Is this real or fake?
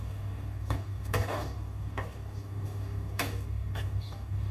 fake